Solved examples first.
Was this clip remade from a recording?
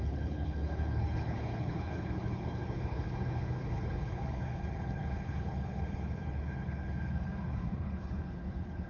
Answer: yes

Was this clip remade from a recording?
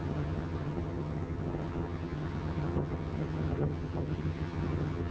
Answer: yes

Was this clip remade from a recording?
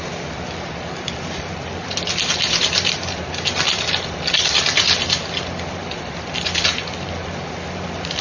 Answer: yes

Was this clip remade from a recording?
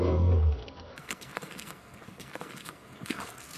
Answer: yes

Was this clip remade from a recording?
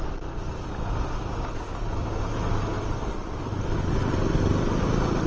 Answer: no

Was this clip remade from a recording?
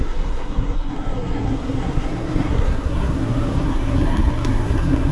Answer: yes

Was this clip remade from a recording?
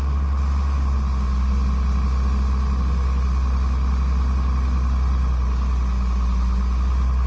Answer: no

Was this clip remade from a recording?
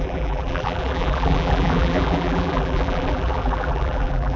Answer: yes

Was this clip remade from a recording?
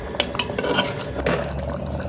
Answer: no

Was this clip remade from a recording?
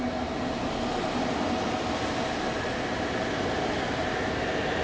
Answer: no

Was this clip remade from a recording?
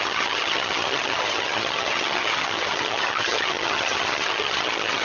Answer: yes